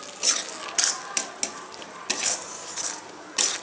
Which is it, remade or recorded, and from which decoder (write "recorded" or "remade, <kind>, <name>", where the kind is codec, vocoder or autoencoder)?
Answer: recorded